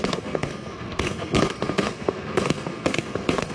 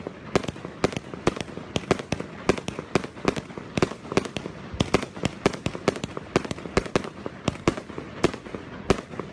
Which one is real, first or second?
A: second